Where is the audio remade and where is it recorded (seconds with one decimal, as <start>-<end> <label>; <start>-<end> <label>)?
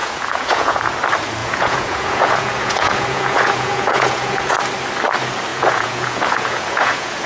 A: 0.0-0.9 remade; 0.9-1.4 recorded; 1.4-4.6 remade; 4.6-5.5 recorded; 5.5-7.3 remade